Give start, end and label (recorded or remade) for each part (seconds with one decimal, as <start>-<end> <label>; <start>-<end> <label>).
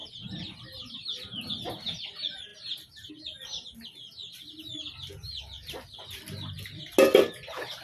0.0-1.5 remade; 1.5-4.2 recorded; 4.2-6.8 remade; 6.8-7.8 recorded